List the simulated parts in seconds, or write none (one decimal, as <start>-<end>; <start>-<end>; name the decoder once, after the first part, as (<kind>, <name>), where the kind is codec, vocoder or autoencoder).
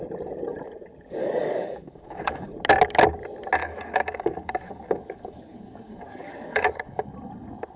1.2-2.5 (codec, DAC); 3.6-7.1